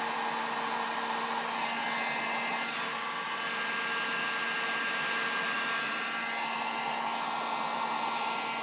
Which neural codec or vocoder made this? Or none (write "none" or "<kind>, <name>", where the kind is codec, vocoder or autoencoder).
none